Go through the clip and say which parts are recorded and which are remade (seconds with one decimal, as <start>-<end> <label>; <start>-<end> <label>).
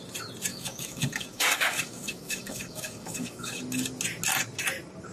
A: 0.0-0.5 recorded; 0.5-3.6 remade; 3.6-5.1 recorded